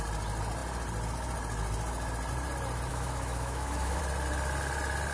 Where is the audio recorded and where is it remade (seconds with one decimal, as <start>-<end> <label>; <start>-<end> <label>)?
0.0-2.9 recorded; 2.9-4.0 remade; 4.0-5.1 recorded